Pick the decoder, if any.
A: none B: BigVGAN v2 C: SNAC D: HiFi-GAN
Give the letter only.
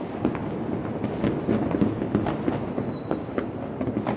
A